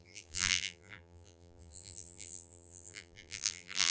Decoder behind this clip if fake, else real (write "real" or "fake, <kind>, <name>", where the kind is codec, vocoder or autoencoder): fake, vocoder, BigVGAN v2